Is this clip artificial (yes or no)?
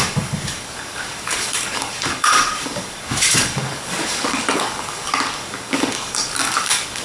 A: yes